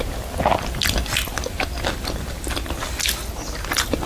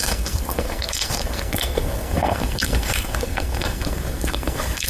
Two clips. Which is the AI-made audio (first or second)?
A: second